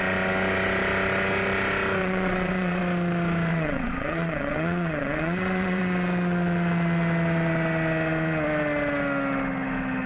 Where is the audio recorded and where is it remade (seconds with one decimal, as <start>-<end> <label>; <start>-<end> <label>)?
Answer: 0.0-2.0 recorded; 2.0-2.8 remade; 2.8-3.5 recorded; 3.5-5.8 remade; 5.8-10.1 recorded